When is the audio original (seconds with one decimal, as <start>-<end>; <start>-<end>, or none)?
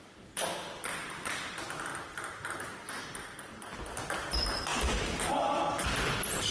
1.9-3.0